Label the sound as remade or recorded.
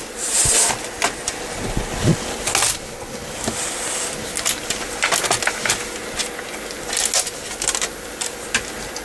recorded